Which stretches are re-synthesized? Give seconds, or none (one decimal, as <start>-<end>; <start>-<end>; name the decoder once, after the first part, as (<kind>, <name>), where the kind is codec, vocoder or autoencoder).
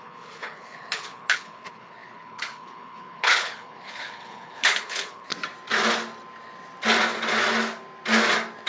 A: 0.0-5.3 (codec, HILCodec)